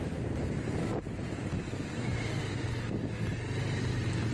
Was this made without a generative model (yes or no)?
yes